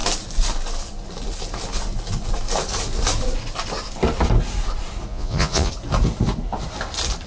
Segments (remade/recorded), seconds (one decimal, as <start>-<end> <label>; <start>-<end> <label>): 0.0-5.1 recorded; 5.1-5.7 remade; 5.7-7.3 recorded